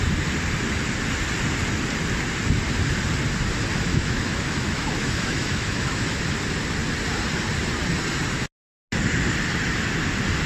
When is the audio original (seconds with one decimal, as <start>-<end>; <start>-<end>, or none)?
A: 0.0-3.9; 6.2-10.5